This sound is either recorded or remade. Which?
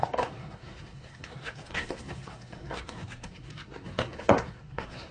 remade